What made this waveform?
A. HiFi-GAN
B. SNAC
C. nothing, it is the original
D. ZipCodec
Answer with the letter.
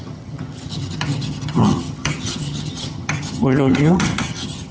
A